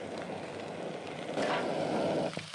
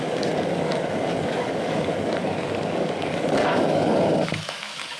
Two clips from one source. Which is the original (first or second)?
first